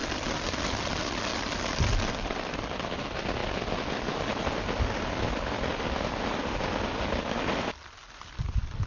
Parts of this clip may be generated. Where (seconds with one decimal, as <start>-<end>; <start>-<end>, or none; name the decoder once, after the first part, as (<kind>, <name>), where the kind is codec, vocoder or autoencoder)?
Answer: none